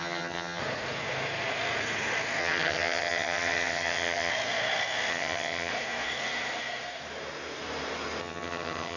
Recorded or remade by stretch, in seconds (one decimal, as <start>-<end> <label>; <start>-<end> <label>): 0.0-0.6 remade; 0.6-2.4 recorded; 2.4-4.3 remade; 4.3-5.1 recorded; 5.1-5.7 remade; 5.7-8.2 recorded; 8.2-9.0 remade